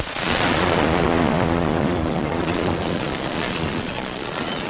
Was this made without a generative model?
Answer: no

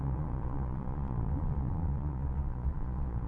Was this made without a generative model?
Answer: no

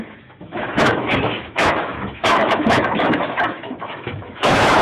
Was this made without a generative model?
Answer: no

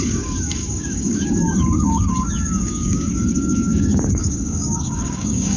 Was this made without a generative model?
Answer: no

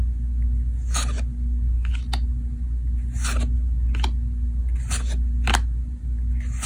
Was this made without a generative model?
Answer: yes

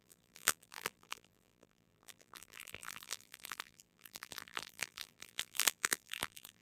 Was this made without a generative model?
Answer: no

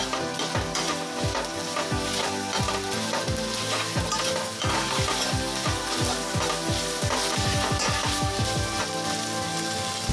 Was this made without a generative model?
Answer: yes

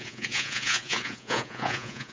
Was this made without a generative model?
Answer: no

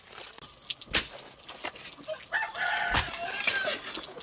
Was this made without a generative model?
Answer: yes